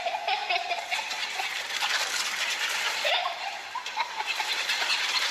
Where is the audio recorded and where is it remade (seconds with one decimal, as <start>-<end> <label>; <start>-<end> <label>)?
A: 0.0-0.4 remade; 0.4-2.9 recorded; 2.9-5.3 remade